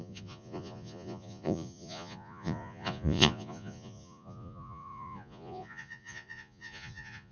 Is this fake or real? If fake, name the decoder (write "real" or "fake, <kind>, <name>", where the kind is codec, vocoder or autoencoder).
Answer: fake, vocoder, Vocos